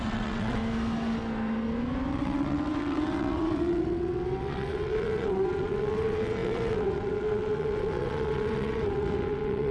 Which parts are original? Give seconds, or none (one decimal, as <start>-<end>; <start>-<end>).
0.6-2.1